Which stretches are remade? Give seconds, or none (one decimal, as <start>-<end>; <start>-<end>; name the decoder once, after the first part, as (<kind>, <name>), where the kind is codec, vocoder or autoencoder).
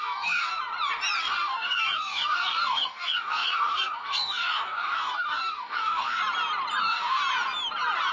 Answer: 0.0-0.5 (codec, DAC); 1.2-6.2; 6.8-7.2